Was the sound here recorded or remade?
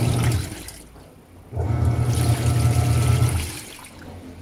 recorded